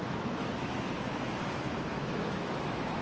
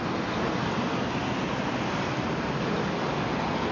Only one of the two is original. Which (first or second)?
second